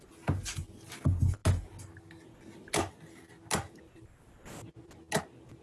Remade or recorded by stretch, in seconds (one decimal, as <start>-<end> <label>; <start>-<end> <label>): 0.0-5.6 recorded